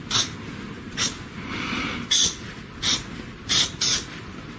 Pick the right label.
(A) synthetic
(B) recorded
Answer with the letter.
B